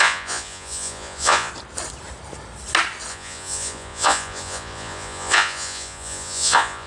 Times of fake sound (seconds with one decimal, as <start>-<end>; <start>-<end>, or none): 0.0-1.5; 3.1-6.9